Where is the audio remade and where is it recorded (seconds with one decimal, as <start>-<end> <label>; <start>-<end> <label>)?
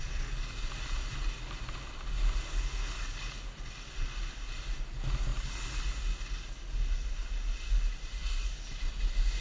0.0-9.4 recorded